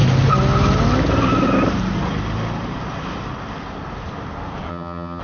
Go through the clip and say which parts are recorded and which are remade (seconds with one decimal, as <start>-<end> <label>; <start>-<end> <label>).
0.0-4.7 recorded; 4.7-5.2 remade